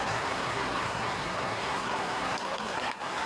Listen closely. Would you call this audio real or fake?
fake